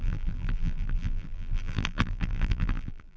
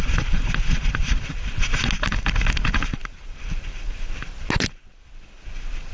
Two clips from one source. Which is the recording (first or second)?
second